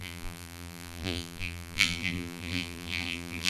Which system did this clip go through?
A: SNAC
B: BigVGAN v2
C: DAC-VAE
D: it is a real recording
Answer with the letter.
B